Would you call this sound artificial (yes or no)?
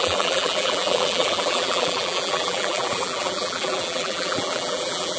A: yes